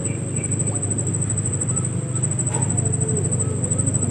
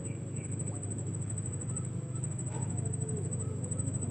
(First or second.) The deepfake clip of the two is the second